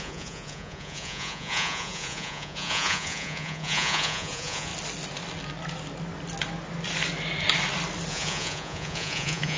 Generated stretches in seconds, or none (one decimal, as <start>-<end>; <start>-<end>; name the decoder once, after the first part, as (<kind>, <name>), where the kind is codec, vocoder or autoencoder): 0.0-4.7 (vocoder, Vocos); 8.1-9.6